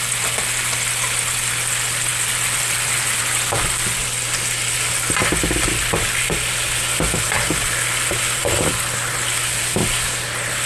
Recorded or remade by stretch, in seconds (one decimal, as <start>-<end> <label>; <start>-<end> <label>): 0.0-10.7 recorded